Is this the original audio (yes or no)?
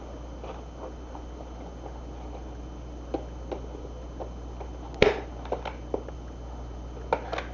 yes